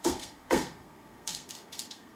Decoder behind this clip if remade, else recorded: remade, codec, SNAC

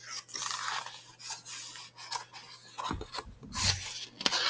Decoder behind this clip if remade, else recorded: recorded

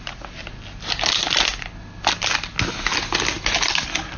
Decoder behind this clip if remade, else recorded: recorded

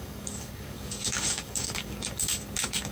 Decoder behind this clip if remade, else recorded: remade, codec, DAC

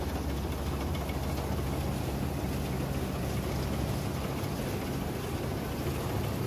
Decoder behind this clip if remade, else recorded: recorded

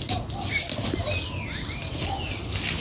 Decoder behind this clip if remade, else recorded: recorded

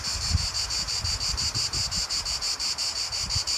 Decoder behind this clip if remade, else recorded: remade, vocoder, BigVGAN v2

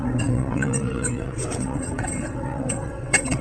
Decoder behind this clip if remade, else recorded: remade, vocoder, WaveNeXt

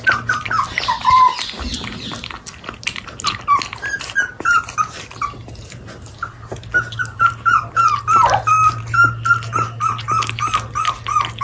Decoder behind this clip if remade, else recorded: recorded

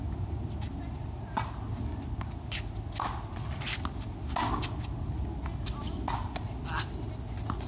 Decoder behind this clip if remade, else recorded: recorded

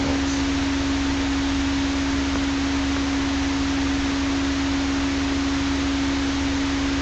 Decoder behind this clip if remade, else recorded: recorded